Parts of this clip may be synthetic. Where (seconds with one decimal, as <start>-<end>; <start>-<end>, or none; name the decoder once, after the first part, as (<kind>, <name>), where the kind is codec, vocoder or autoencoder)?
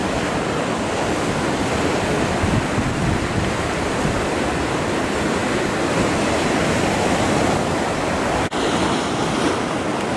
none